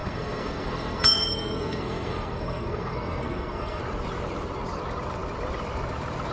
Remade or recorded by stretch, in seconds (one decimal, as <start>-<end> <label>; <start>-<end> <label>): 0.0-3.8 remade; 3.8-6.3 recorded